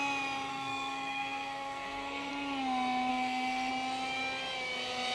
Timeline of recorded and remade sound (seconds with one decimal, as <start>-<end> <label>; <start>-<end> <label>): 0.0-0.5 recorded; 0.5-2.3 remade; 2.3-3.1 recorded; 3.1-3.7 remade; 3.7-5.1 recorded

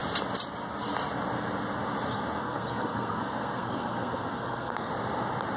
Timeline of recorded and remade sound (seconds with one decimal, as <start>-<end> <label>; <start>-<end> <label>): 0.0-2.4 recorded; 2.4-4.9 remade; 4.9-5.6 recorded

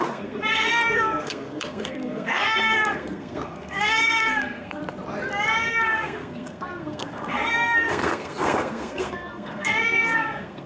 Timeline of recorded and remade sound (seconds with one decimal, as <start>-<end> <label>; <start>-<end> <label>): 0.0-4.8 remade; 4.8-5.7 recorded; 5.7-10.7 remade

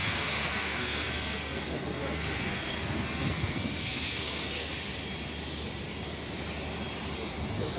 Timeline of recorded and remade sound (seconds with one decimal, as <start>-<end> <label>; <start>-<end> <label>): 0.0-4.7 remade; 4.7-7.8 recorded

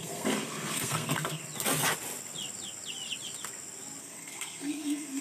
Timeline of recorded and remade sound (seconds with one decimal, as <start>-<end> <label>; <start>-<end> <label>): 0.0-1.4 remade; 1.4-4.0 recorded; 4.0-5.2 remade

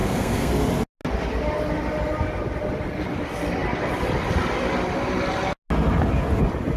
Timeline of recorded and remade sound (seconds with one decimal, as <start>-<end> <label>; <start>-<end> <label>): 0.0-0.5 remade; 0.5-6.8 recorded

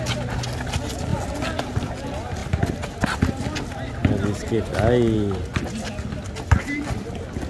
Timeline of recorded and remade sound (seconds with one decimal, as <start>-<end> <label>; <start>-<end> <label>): 0.0-7.5 recorded

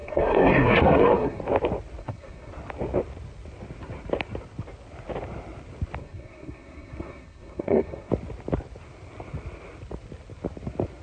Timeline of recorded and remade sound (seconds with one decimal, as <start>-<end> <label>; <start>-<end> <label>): 0.0-1.4 remade; 1.4-2.0 recorded; 2.0-2.5 remade; 2.5-6.0 recorded; 6.0-8.1 remade; 8.1-11.0 recorded